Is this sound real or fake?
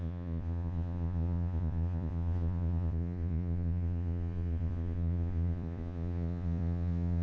fake